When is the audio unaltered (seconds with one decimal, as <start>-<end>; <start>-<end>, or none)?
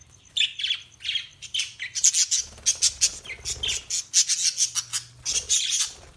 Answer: 1.6-4.9